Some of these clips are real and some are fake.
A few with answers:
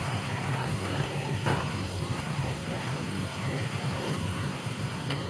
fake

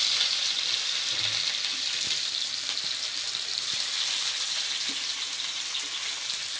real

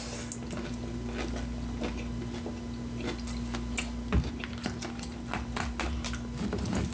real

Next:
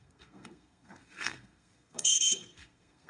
fake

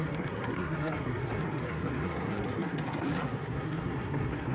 fake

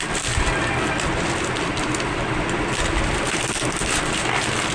real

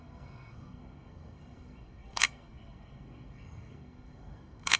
fake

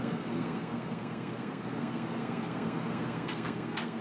fake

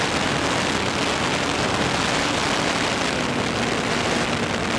real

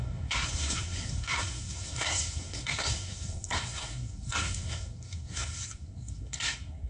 fake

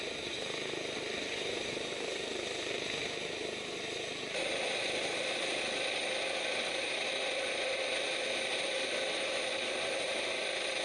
real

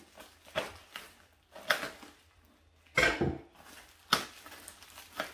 real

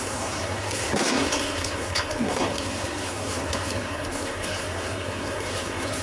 fake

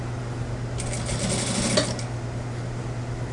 real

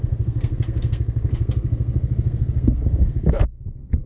fake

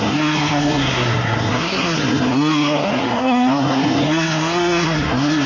fake